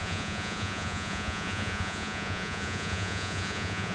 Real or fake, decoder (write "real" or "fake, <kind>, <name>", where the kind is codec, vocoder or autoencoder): fake, vocoder, Vocos